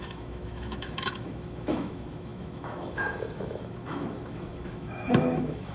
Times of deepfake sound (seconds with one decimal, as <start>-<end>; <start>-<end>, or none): 0.0-5.7